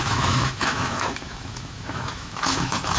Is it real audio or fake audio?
fake